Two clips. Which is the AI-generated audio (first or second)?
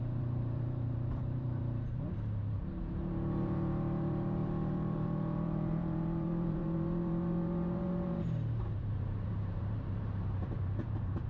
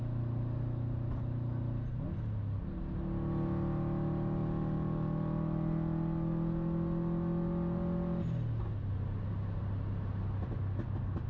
first